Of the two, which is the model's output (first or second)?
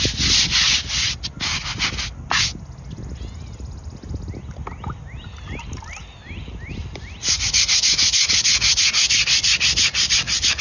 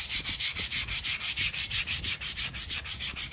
second